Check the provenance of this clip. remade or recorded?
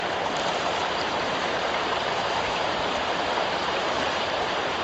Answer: remade